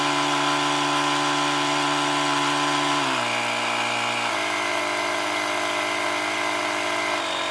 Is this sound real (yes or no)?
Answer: yes